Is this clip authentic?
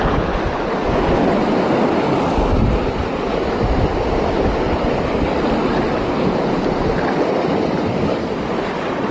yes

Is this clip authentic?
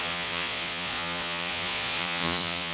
no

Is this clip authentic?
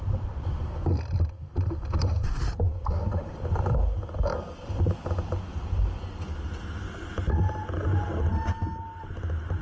yes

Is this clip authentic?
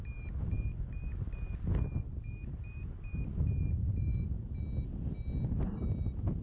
yes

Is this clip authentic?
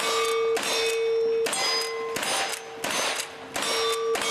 yes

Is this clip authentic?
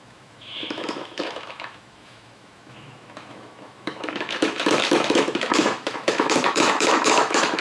no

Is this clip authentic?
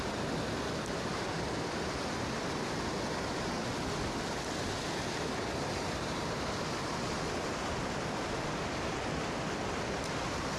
yes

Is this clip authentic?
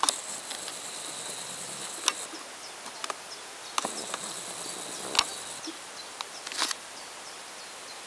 yes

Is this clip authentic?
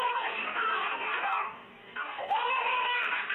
no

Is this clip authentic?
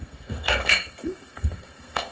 no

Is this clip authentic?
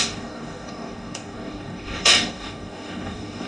no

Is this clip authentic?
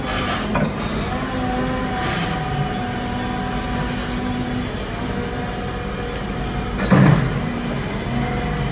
yes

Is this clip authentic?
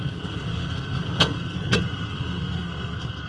no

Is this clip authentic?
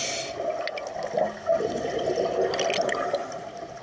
yes